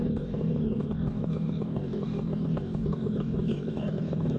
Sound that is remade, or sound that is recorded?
remade